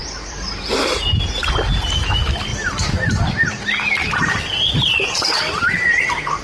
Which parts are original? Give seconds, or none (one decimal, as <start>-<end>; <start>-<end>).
0.6-4.0; 5.7-6.4